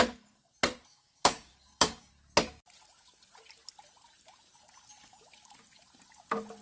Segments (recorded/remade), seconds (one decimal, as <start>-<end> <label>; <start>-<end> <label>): 0.0-0.9 recorded; 0.9-2.1 remade; 2.1-6.6 recorded